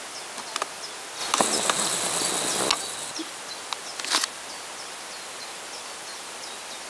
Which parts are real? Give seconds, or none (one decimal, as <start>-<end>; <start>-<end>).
0.0-6.9